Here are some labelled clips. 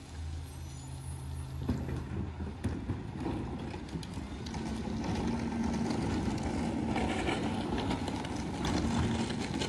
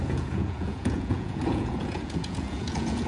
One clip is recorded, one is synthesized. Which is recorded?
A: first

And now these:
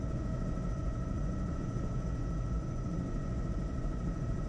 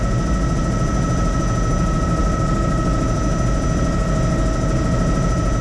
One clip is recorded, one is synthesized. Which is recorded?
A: second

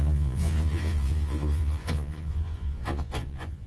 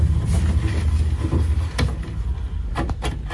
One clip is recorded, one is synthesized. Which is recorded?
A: second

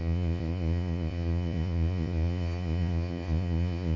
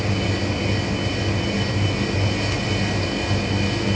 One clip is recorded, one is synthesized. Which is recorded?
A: second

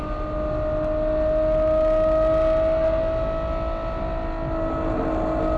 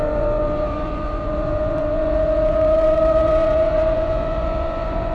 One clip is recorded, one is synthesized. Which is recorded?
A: first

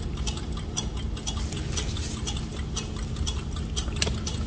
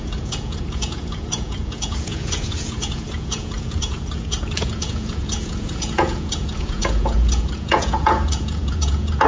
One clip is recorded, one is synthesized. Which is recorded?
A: first